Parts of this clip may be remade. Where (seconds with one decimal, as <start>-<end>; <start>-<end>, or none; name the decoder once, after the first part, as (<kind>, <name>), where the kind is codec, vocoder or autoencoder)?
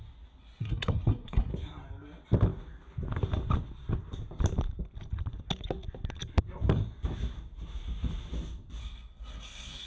0.4-1.5 (codec, SNAC); 8.8-9.9